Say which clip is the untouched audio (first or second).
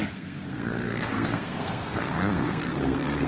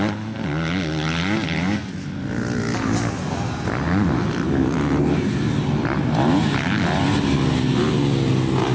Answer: second